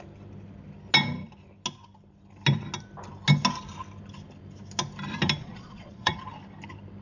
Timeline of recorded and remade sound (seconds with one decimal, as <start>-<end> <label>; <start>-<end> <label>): 0.0-5.4 recorded; 5.4-6.2 remade; 6.2-7.0 recorded